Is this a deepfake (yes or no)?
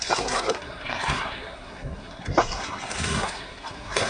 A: yes